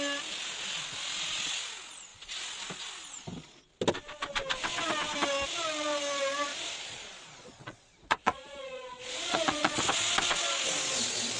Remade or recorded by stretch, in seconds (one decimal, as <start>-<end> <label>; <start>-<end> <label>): 0.0-6.5 recorded; 6.5-9.8 remade; 9.8-11.4 recorded